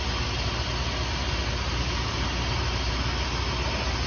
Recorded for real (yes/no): yes